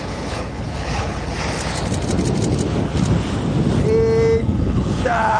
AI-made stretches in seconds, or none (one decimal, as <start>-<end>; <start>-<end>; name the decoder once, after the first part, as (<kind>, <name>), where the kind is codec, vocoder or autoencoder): 0.0-1.3 (codec, HILCodec); 4.4-5.4